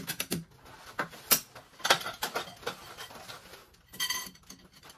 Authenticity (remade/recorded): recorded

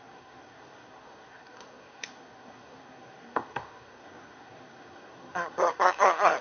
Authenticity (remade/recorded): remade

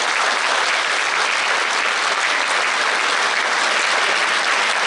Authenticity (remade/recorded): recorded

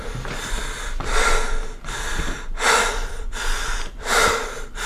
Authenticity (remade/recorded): recorded